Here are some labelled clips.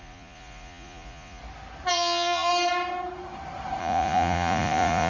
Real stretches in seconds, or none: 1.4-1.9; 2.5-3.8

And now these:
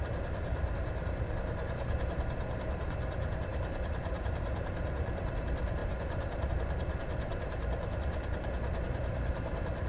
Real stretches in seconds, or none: 1.6-2.2

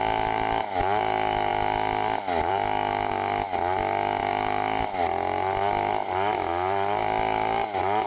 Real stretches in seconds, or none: 0.0-8.1

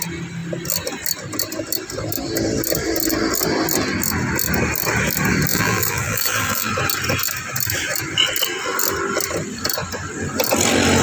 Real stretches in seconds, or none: 0.0-5.5; 6.7-11.0

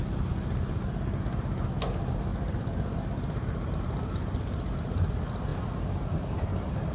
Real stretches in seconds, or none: 0.0-6.9